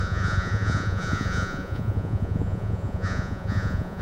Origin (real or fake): fake